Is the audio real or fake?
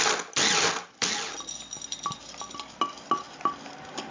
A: real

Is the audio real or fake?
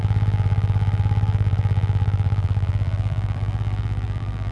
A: fake